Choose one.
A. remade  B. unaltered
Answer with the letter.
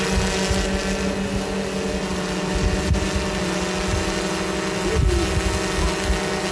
B